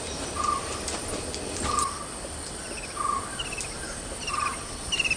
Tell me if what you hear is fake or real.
fake